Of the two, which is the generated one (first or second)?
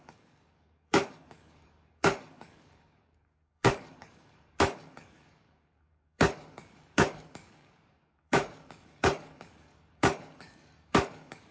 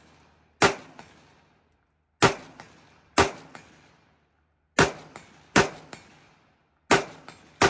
first